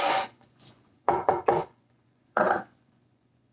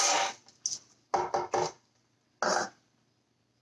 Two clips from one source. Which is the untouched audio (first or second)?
second